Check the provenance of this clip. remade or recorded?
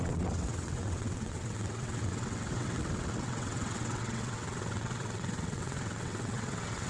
remade